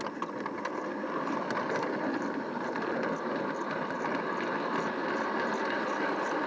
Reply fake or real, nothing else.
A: real